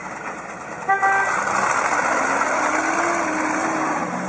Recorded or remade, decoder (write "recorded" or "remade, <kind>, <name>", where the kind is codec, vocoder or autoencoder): recorded